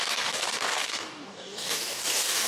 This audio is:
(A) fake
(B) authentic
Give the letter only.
A